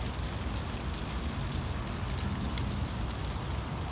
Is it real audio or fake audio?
real